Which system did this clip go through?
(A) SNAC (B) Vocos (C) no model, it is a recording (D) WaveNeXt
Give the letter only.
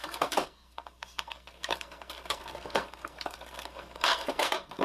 A